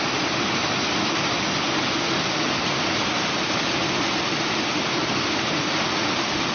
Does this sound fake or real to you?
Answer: real